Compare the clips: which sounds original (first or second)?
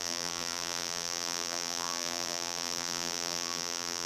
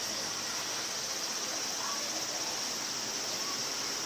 second